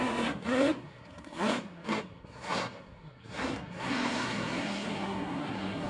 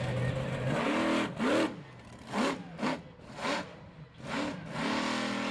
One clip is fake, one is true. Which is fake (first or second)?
first